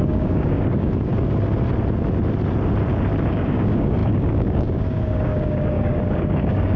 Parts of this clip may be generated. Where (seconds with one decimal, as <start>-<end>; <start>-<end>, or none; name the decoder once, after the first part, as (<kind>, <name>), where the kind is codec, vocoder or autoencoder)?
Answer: 0.0-1.1 (codec, DAC); 3.3-6.8